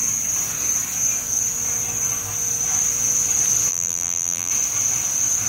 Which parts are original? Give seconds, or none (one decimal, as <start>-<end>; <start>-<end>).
0.0-3.7; 4.5-5.5

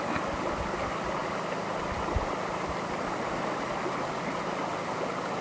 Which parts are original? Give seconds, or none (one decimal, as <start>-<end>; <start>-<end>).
0.0-5.4

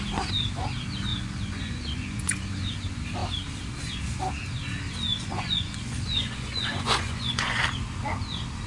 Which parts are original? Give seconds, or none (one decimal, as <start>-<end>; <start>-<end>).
0.0-1.1; 2.7-5.1; 7.6-8.7

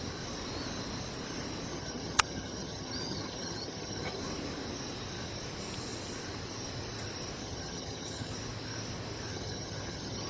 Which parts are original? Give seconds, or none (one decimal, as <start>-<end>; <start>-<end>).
0.0-1.7; 4.2-7.4; 8.3-9.3

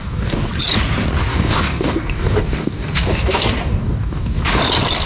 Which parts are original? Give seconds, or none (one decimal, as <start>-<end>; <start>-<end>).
0.5-1.3; 4.4-5.1

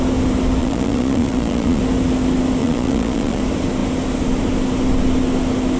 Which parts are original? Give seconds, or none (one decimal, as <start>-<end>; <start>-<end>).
0.0-0.6; 1.8-2.6; 3.4-5.8